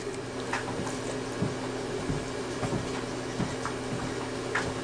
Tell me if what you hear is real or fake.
real